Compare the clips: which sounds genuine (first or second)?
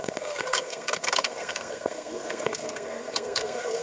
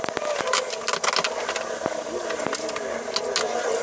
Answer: second